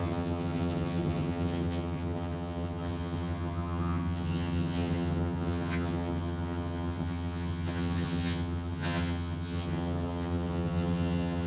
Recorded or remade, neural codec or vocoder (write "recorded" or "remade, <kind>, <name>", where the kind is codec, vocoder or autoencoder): remade, vocoder, HiFi-GAN